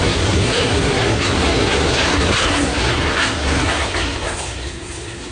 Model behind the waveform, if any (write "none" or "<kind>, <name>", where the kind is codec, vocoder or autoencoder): codec, SNAC